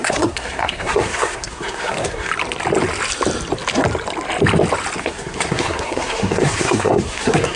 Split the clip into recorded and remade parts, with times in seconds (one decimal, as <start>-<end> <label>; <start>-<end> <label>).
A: 0.0-2.3 remade; 2.3-5.0 recorded; 5.0-7.6 remade